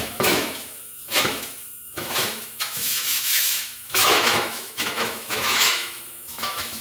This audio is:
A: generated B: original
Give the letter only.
A